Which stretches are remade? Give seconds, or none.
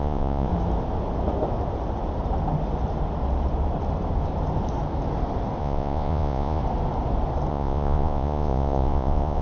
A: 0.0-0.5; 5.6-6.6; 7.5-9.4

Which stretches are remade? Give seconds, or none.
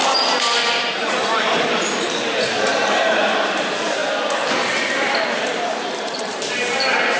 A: 0.8-4.0; 5.6-7.2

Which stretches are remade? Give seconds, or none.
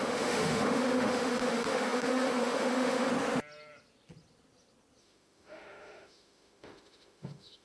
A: 0.0-3.1; 5.0-7.6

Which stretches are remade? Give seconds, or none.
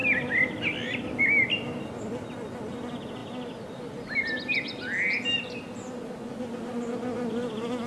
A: none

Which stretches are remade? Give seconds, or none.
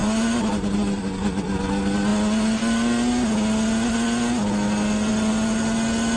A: 0.0-1.0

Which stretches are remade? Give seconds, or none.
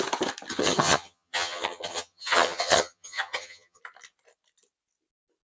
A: 0.5-3.8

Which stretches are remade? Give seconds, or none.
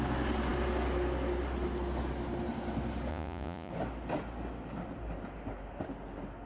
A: 3.1-3.7